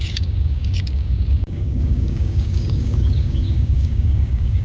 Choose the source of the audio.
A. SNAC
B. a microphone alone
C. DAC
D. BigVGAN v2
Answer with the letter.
C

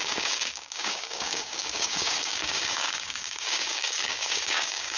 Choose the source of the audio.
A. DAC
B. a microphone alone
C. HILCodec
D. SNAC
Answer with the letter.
A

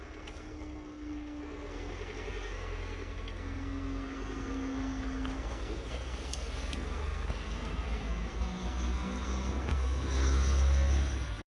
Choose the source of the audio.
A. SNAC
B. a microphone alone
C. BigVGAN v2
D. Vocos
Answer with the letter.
A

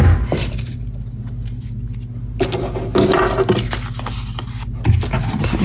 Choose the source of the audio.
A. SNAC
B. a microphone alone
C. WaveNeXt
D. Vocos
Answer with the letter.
B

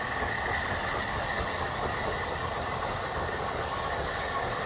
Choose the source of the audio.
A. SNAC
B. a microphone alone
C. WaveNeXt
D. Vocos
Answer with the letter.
B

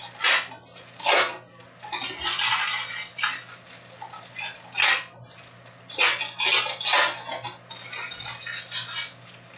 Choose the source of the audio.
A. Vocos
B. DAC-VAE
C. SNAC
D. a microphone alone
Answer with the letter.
D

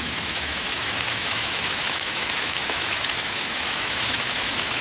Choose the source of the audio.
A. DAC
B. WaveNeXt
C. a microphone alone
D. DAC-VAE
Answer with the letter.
D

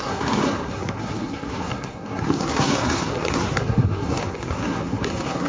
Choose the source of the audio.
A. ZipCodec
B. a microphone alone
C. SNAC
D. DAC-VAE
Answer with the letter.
C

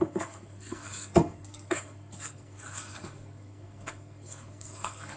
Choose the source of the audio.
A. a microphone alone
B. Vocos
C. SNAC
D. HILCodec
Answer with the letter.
C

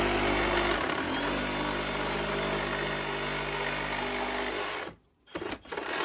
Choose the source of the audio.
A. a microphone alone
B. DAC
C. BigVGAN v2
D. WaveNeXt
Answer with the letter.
A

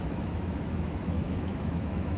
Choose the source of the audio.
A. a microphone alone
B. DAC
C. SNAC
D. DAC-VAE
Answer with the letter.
D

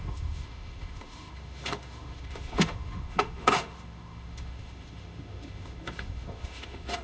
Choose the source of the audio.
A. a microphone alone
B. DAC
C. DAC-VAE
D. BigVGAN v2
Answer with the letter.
C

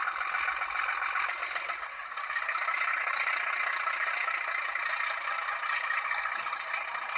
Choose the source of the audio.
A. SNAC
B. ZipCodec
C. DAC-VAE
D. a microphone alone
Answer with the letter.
D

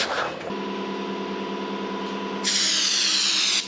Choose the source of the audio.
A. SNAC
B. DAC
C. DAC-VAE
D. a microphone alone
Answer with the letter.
D